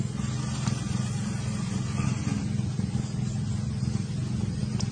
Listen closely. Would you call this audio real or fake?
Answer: real